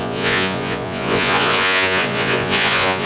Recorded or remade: remade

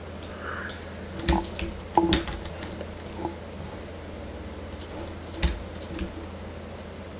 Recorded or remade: recorded